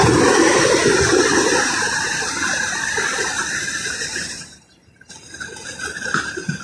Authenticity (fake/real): fake